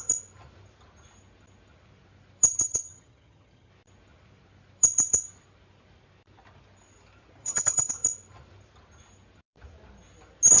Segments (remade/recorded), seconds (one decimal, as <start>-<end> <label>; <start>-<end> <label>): 0.0-2.5 recorded; 2.5-3.7 remade; 3.7-7.4 recorded; 7.4-7.9 remade; 7.9-10.6 recorded